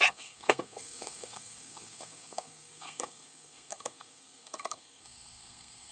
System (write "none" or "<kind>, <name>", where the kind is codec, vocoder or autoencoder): codec, SNAC